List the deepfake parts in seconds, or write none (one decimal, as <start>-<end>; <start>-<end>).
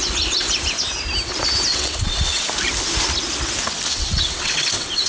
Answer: 1.7-2.4; 3.9-5.1